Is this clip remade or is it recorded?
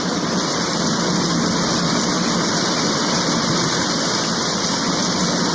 recorded